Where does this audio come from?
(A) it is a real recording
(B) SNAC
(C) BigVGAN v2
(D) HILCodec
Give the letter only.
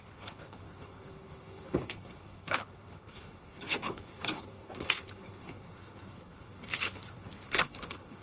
D